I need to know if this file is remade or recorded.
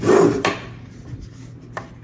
recorded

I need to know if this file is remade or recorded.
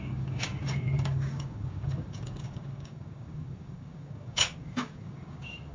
remade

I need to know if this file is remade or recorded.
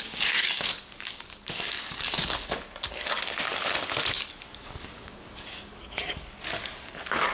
remade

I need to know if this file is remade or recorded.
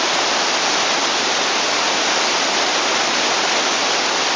recorded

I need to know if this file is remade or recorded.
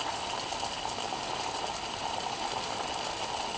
recorded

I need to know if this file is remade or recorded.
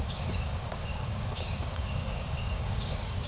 remade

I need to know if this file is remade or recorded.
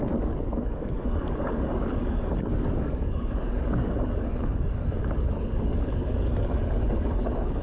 remade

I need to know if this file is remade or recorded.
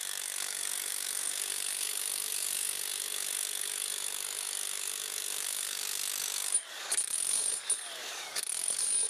remade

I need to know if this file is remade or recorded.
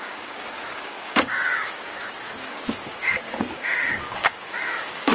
remade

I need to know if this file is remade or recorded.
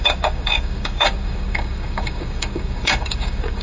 remade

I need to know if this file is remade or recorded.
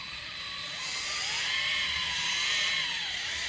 recorded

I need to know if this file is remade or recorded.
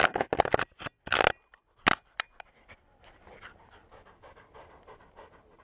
recorded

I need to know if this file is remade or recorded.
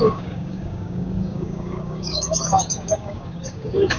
remade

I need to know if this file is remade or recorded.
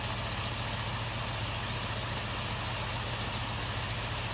recorded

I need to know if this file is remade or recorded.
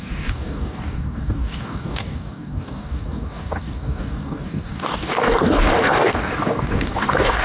remade